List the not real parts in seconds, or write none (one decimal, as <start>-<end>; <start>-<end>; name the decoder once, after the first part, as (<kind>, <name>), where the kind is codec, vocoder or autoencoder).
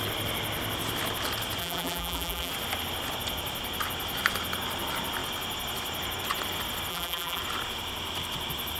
1.6-2.5 (vocoder, BigVGAN v2); 6.9-7.4